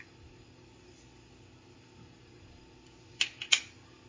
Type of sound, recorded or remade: recorded